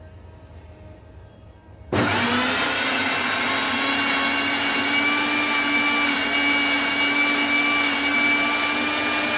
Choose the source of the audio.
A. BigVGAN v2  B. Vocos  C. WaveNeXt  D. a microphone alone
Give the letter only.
D